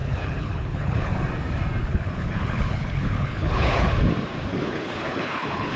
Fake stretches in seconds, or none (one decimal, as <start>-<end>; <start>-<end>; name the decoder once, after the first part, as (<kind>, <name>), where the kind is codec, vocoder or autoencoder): 0.0-1.1 (codec, HILCodec); 1.8-3.9; 4.5-5.8